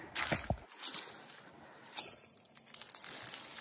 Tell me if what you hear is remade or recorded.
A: recorded